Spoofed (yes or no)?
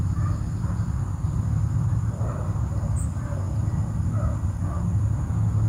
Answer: no